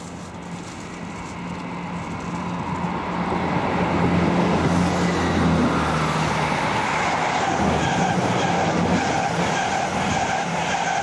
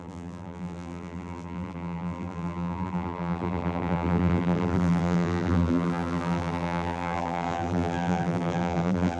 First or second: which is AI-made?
second